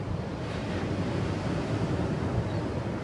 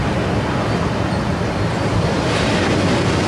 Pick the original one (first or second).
second